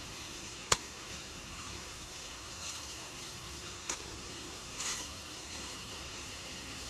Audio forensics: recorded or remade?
remade